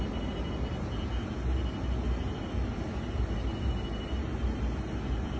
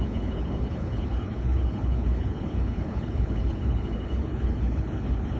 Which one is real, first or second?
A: first